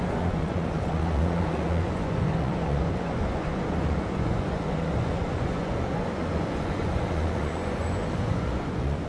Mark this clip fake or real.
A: fake